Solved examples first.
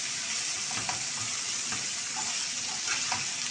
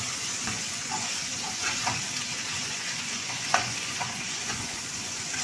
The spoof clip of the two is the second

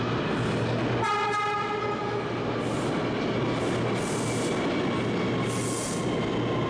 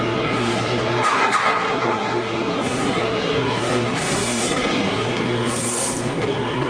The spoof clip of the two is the second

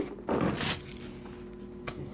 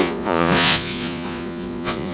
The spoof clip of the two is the second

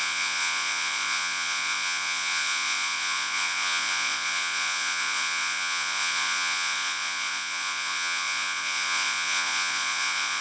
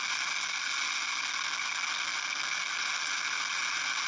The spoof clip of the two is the first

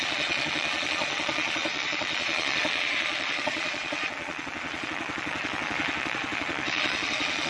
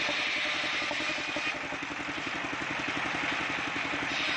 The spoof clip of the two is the first